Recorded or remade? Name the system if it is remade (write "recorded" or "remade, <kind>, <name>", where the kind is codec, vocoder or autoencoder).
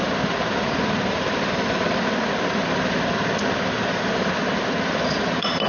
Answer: recorded